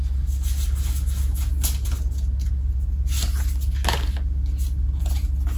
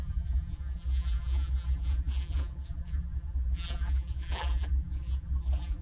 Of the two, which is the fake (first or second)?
second